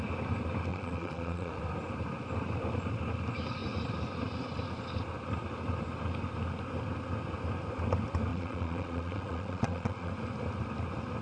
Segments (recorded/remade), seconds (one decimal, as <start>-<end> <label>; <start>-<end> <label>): 0.0-0.7 recorded; 0.7-1.5 remade; 1.5-8.3 recorded; 8.3-10.1 remade; 10.1-11.2 recorded